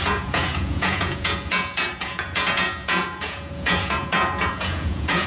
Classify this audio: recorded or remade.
remade